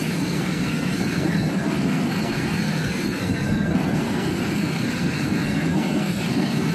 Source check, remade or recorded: remade